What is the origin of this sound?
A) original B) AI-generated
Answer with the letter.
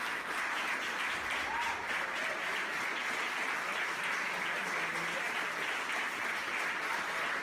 A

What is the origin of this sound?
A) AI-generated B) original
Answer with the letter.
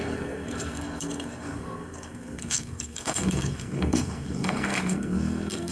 A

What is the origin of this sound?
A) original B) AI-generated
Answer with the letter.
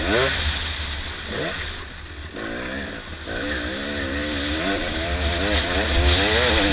A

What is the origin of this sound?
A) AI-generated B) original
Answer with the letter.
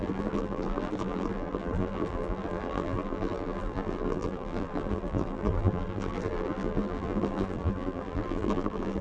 A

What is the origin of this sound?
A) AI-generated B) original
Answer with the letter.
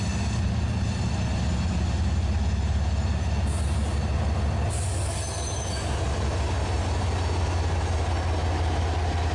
B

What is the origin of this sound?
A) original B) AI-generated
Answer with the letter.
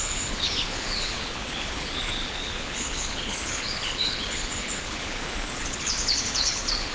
B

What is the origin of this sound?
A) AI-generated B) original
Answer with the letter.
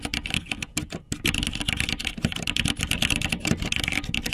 B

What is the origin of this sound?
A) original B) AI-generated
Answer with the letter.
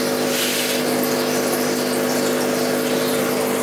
A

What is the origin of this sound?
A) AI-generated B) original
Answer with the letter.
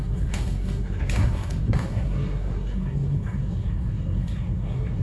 A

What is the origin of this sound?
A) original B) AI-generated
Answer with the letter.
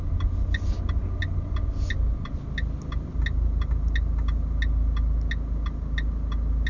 A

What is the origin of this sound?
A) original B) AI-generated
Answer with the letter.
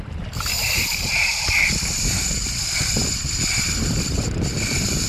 B